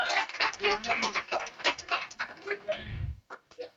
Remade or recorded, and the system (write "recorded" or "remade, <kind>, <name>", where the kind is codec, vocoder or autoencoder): remade, codec, DAC